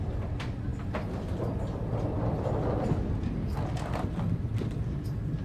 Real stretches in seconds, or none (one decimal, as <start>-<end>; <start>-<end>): 0.0-5.4